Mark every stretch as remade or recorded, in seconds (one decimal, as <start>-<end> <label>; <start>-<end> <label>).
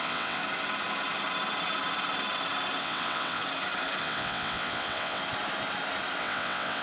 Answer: 0.0-0.4 remade; 0.4-2.8 recorded; 2.8-3.4 remade; 3.4-4.0 recorded; 4.0-5.2 remade; 5.2-6.2 recorded; 6.2-6.8 remade